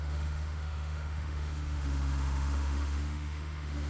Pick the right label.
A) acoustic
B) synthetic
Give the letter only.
B